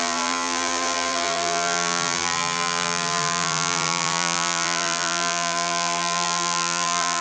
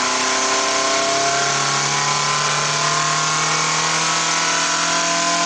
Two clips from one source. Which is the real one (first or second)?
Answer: second